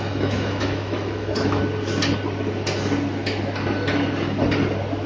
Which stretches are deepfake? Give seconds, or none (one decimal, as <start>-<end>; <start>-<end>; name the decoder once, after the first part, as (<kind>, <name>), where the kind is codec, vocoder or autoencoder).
0.0-1.6 (autoencoder, DAC-VAE)